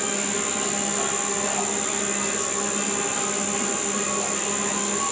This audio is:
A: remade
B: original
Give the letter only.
B